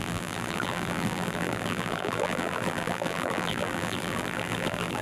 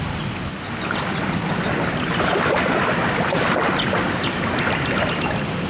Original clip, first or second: second